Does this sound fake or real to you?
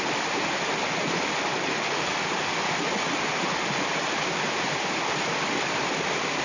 real